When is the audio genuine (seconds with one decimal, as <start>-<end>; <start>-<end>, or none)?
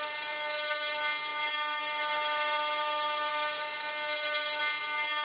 0.0-5.2